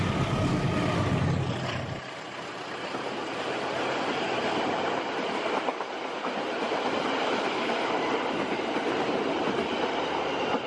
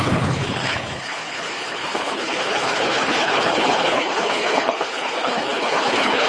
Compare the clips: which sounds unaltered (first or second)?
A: first